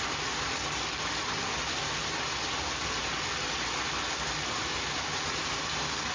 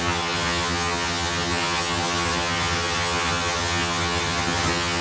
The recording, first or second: first